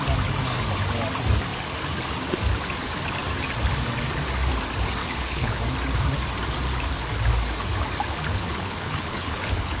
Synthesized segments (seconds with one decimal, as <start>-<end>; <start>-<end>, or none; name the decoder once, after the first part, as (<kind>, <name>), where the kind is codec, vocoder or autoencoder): 5.0-5.6 (codec, HILCodec); 8.3-9.8